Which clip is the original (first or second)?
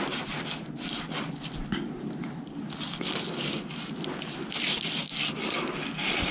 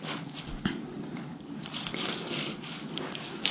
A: first